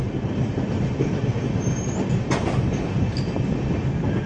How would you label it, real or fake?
real